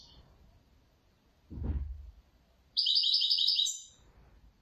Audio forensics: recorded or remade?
remade